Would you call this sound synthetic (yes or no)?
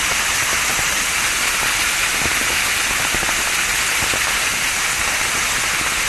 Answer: no